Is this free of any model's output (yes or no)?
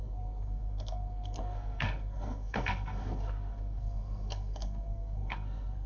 no